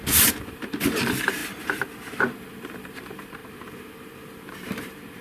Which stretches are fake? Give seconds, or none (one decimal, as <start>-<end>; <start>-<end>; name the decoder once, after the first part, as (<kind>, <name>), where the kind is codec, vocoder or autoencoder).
0.0-5.2 (vocoder, BigVGAN v2)